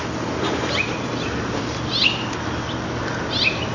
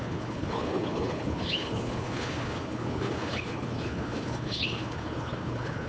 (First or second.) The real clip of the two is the first